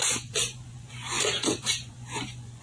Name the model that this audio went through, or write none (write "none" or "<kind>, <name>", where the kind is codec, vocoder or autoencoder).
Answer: vocoder, Vocos